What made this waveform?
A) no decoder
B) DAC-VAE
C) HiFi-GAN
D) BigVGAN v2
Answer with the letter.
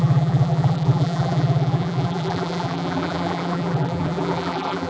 D